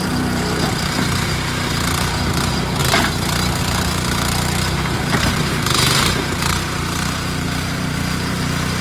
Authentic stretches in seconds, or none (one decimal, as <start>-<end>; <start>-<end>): 2.8-3.6